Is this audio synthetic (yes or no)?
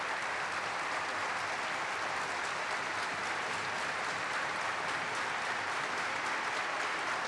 yes